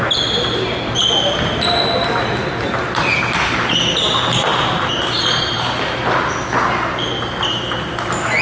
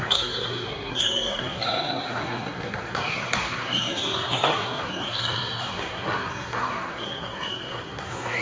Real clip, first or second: first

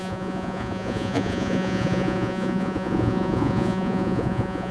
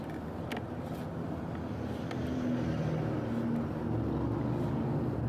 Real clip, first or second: second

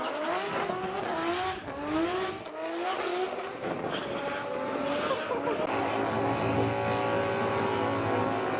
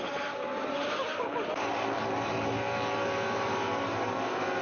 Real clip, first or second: first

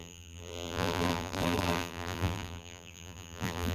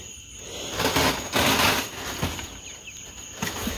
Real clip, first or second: second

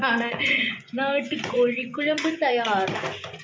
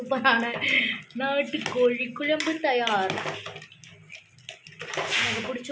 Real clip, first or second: second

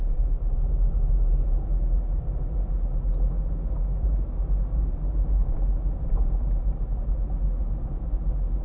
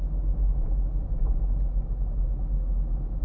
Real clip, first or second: second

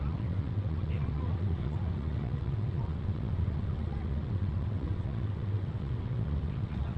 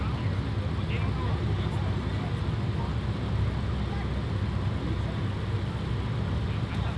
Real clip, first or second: second